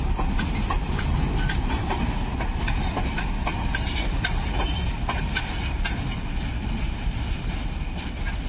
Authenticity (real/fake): real